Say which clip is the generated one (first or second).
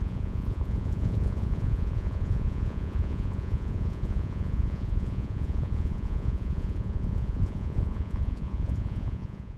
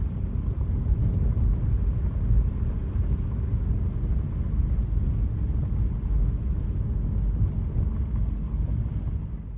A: first